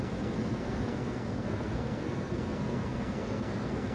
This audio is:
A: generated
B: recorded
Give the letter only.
A